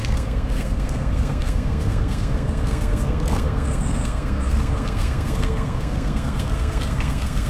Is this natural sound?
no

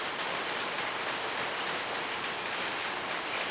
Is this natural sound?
yes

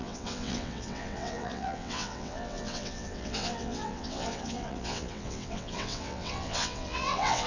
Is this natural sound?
no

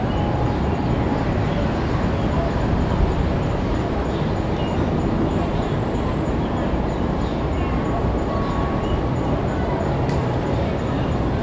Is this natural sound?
yes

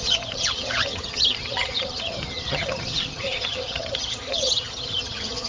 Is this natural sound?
no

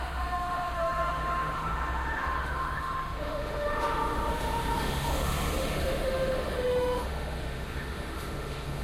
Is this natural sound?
no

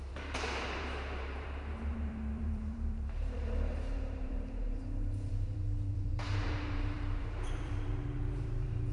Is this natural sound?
no